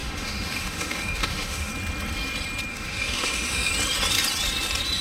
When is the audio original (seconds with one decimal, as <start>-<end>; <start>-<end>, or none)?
1.7-2.7; 3.7-5.0